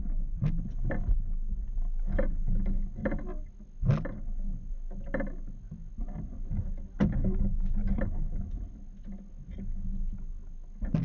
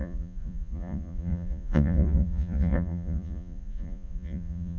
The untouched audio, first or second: first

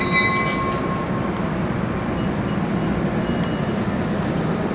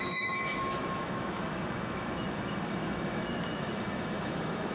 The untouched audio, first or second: first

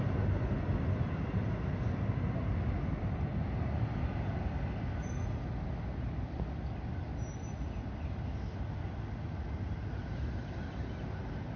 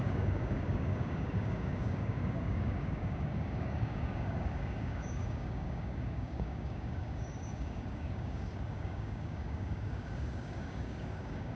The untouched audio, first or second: first